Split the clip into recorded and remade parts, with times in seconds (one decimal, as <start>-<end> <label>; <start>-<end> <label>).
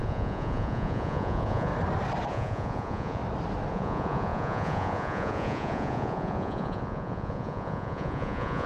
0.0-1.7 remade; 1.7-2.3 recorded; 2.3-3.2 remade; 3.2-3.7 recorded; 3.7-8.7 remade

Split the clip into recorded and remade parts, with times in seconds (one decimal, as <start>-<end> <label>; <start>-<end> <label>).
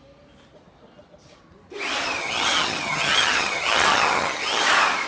0.0-2.2 recorded; 2.2-4.6 remade; 4.6-5.1 recorded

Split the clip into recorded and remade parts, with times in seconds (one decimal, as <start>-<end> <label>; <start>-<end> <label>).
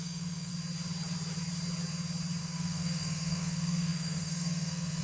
0.0-0.5 remade; 0.5-2.4 recorded; 2.4-5.0 remade